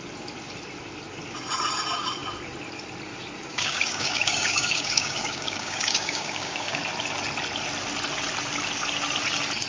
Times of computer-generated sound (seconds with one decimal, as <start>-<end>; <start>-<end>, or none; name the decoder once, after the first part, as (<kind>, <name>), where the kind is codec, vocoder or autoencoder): 3.5-6.8 (codec, DAC)